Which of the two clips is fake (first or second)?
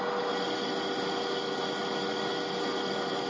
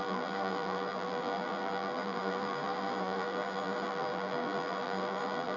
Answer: second